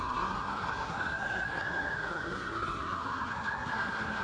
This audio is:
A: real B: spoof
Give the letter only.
B